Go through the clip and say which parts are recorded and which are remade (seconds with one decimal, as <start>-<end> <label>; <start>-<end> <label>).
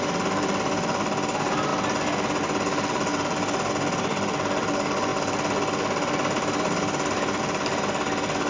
0.0-8.5 recorded